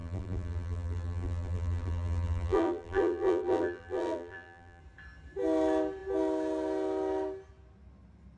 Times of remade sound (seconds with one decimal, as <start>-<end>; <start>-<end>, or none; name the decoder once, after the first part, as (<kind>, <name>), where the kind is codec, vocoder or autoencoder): 0.0-4.8 (vocoder, BigVGAN v2)